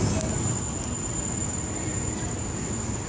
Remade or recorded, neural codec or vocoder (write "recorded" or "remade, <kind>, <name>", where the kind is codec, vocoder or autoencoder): recorded